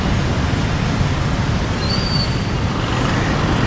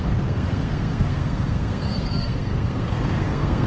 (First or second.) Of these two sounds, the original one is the first